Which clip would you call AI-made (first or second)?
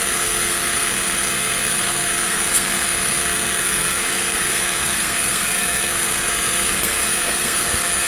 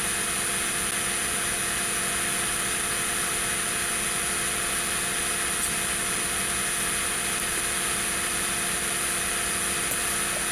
first